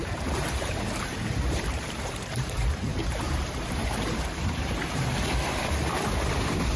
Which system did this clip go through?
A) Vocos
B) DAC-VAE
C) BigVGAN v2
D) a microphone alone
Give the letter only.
C